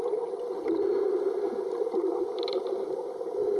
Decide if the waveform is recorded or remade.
recorded